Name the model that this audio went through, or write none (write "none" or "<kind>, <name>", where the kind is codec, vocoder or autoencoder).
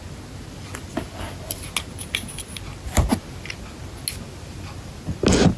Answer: none